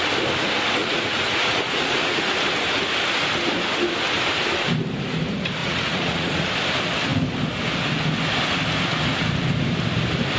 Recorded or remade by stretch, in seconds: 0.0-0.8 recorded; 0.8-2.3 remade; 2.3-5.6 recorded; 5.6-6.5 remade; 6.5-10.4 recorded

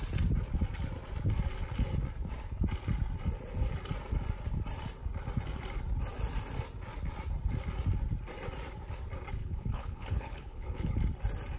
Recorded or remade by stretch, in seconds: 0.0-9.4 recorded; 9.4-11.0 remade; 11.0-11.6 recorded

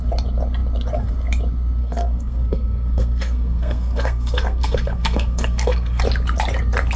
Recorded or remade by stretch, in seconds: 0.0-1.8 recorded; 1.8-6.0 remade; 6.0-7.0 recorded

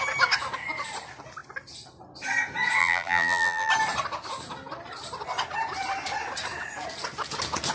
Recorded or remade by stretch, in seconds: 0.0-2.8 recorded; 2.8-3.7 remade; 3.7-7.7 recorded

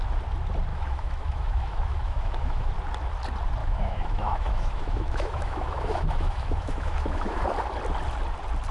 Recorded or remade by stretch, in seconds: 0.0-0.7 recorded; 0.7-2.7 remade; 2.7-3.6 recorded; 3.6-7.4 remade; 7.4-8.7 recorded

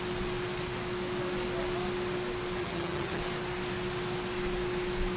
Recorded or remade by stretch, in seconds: 0.0-2.6 recorded; 2.6-3.2 remade; 3.2-5.2 recorded